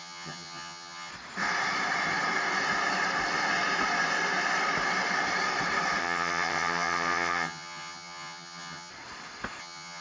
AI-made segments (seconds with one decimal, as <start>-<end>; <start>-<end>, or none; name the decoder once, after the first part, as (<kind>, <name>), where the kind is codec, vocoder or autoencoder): 0.0-1.1 (vocoder, HiFi-GAN); 6.0-8.9; 9.6-10.0